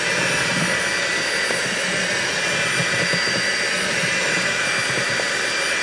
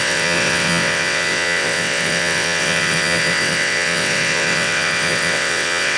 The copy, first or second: second